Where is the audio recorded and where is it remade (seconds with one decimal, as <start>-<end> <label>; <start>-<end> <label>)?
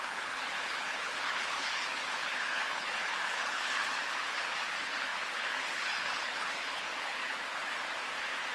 0.0-7.6 remade; 7.6-8.5 recorded